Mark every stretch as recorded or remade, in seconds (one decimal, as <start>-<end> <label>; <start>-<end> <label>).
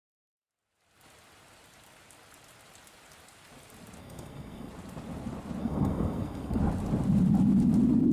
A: 0.0-4.0 recorded; 4.0-4.7 remade; 4.7-5.6 recorded; 5.6-6.6 remade; 6.6-8.1 recorded